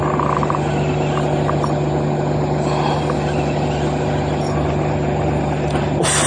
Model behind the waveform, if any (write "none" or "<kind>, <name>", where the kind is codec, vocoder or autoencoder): none